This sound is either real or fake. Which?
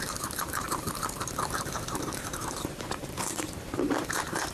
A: fake